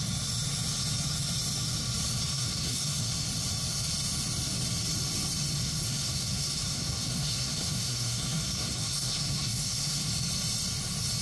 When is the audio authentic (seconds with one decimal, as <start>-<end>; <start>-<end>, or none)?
0.0-2.3; 3.1-5.6; 10.1-11.2

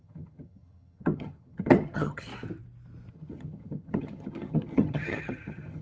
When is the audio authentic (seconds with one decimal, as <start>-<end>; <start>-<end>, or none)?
2.3-3.1